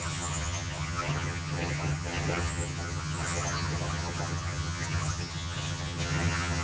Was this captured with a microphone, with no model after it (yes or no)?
no